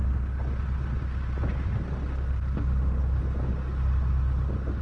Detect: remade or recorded recorded